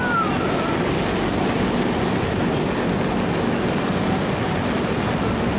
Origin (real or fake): real